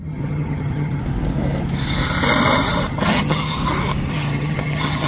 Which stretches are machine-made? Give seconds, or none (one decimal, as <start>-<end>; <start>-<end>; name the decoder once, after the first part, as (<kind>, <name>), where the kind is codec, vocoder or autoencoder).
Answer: 0.0-1.0 (vocoder, HiFi-GAN); 2.9-3.6; 4.1-5.1